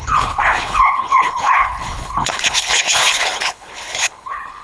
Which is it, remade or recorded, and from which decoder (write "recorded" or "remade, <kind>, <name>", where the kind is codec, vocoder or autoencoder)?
remade, codec, HILCodec